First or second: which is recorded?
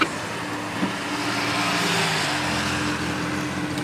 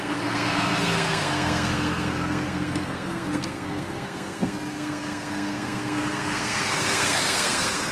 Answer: first